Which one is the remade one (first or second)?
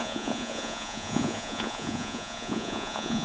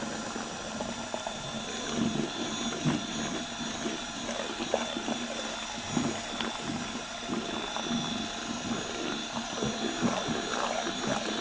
first